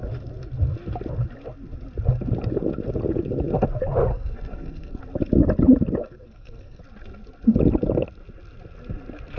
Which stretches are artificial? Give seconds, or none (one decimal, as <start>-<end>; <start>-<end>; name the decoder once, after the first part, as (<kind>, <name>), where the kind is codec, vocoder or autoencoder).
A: 4.1-5.0 (codec, SNAC); 6.0-6.8